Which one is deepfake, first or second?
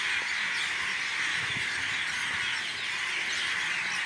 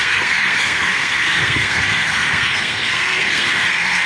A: second